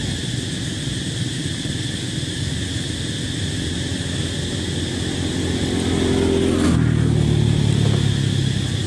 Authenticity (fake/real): real